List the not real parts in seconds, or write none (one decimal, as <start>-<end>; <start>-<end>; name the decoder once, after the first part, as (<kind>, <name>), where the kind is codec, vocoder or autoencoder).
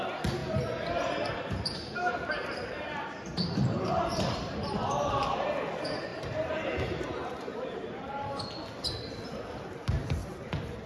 0.4-5.1 (vocoder, BigVGAN v2); 6.1-8.4; 10.2-10.9